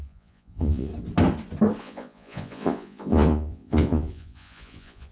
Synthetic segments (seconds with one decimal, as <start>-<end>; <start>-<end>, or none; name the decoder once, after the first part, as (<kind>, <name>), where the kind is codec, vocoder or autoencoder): 0.0-0.9 (vocoder, Vocos); 1.8-5.1